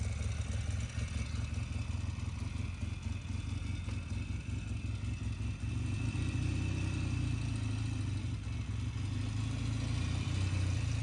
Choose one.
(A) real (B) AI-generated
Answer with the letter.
A